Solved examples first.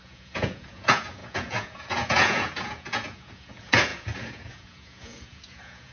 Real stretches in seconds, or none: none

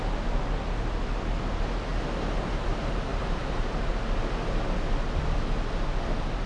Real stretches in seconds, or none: 0.0-1.9; 2.5-3.1; 3.9-6.5